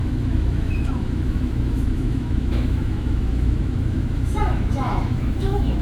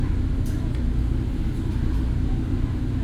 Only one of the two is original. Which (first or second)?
second